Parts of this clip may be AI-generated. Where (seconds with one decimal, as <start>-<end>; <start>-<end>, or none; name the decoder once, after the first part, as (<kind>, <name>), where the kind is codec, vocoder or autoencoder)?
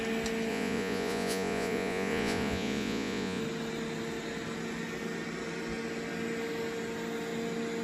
0.5-3.4 (vocoder, Vocos)